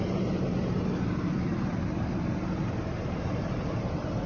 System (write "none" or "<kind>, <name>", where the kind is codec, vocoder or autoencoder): vocoder, BigVGAN v2